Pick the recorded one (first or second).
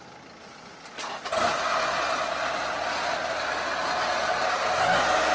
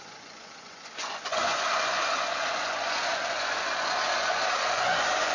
first